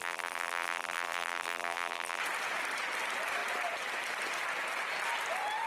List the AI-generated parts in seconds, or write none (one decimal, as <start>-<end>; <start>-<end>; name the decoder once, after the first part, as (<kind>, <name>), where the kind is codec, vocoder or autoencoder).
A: 0.0-2.2 (vocoder, BigVGAN v2)